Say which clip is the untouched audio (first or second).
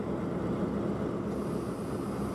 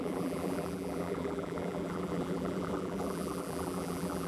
first